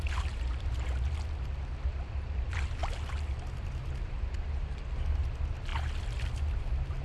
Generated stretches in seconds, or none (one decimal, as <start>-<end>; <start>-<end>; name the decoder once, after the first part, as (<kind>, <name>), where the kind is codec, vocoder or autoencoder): none

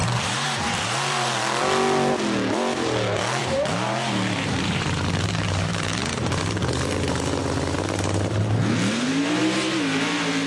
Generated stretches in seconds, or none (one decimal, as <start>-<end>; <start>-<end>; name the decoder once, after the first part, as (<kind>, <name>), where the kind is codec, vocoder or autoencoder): 0.0-1.6 (vocoder, BigVGAN v2); 3.4-6.4

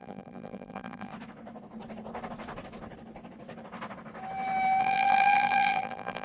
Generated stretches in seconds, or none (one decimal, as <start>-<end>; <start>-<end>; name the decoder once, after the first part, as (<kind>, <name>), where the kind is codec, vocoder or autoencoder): 0.0-1.1 (vocoder, BigVGAN v2); 4.8-6.2

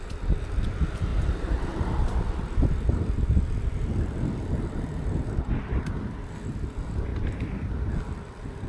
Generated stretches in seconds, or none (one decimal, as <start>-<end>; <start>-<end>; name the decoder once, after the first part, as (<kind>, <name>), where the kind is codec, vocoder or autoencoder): 1.1-5.5 (vocoder, BigVGAN v2); 7.1-7.7

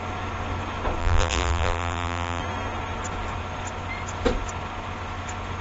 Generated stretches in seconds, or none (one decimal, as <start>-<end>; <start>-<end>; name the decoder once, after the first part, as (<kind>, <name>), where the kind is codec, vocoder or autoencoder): 1.0-2.4 (vocoder, BigVGAN v2)

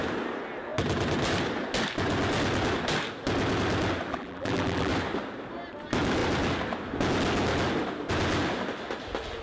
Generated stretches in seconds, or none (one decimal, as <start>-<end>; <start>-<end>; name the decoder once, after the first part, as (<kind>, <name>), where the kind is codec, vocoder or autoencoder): 4.1-4.9 (vocoder, BigVGAN v2)